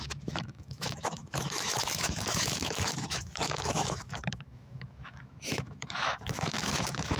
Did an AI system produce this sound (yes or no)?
yes